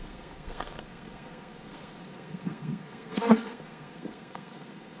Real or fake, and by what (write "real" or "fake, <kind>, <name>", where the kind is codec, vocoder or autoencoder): fake, codec, SNAC